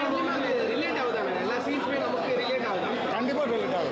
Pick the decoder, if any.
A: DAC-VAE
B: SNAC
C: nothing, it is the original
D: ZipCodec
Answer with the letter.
C